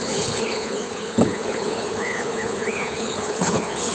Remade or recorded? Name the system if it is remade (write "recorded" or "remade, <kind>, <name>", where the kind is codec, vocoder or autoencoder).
remade, codec, HILCodec